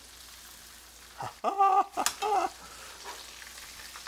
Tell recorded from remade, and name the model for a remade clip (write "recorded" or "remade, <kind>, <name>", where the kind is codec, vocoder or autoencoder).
recorded